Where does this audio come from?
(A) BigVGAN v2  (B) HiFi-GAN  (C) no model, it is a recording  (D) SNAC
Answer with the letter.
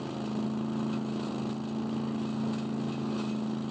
C